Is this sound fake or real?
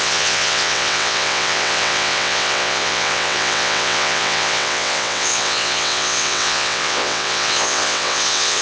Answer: fake